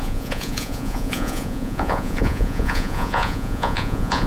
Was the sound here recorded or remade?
remade